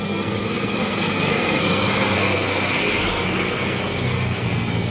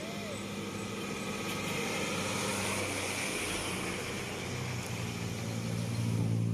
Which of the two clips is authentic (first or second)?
second